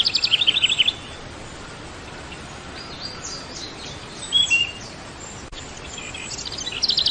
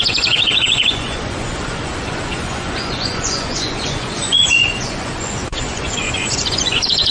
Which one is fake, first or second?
second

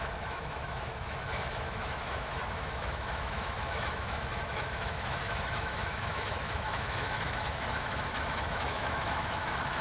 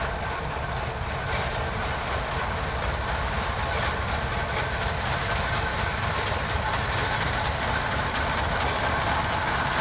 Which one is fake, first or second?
first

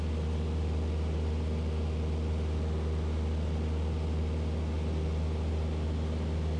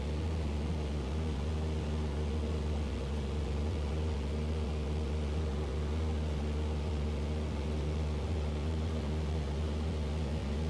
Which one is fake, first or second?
second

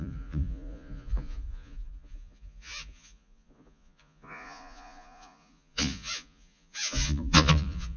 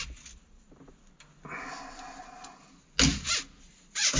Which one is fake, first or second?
first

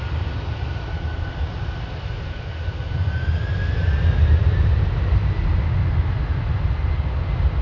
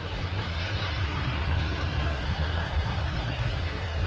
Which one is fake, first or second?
second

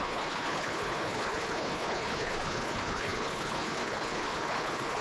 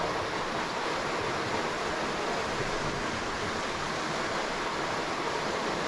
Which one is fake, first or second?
first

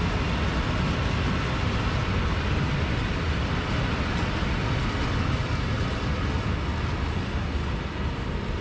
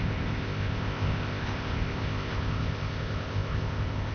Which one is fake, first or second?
second